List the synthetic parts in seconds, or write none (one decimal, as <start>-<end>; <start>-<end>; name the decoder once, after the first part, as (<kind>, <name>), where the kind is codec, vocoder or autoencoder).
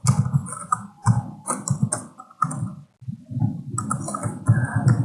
none